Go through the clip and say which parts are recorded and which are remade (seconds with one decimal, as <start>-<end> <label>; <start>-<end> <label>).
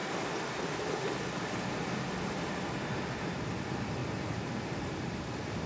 0.0-4.0 recorded; 4.0-5.7 remade